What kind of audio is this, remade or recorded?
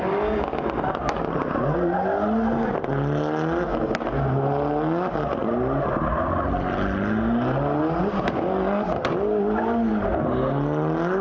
recorded